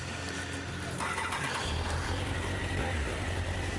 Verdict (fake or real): real